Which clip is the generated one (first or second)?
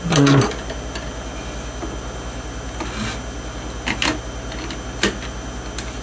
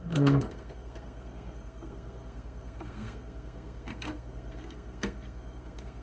second